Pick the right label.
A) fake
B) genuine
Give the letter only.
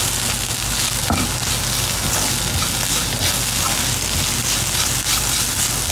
B